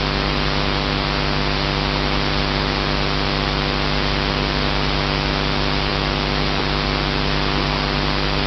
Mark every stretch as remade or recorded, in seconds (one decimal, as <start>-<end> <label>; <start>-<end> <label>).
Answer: 0.0-8.5 recorded